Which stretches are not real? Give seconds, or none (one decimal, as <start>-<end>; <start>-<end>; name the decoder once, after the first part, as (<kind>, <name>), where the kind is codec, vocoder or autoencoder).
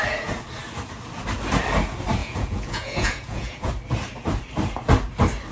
2.2-3.7 (vocoder, Vocos)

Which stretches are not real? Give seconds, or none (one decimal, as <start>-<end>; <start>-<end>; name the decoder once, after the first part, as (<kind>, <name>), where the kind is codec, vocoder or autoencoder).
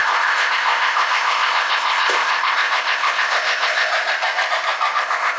0.0-3.9 (codec, ZipCodec); 5.0-5.4